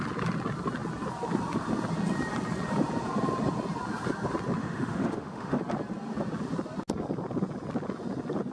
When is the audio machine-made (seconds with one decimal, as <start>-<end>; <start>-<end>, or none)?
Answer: 4.6-5.6